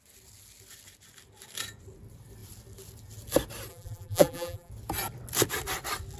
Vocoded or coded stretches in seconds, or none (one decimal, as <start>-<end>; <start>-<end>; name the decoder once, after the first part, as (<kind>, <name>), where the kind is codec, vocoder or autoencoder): 3.7-4.7 (vocoder, BigVGAN v2)